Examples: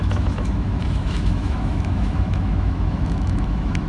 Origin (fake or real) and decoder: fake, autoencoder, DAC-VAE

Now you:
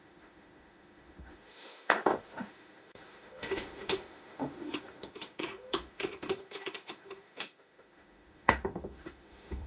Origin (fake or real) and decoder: fake, autoencoder, DAC-VAE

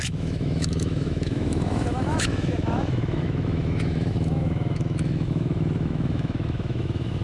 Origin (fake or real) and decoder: fake, autoencoder, DAC-VAE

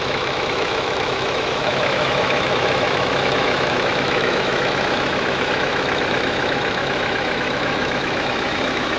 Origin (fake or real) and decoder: fake, autoencoder, DAC-VAE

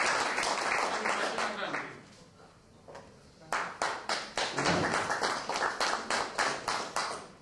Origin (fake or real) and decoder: real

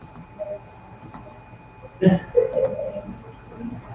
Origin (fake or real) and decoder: real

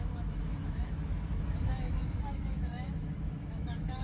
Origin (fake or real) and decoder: fake, autoencoder, DAC-VAE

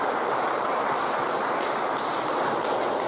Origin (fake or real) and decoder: real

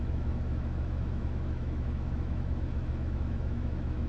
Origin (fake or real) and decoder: fake, autoencoder, DAC-VAE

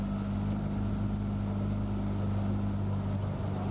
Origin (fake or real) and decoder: real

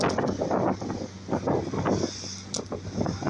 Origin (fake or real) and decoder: real